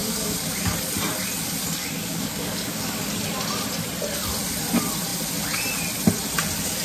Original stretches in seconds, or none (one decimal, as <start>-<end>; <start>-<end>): 0.7-1.8; 3.1-6.8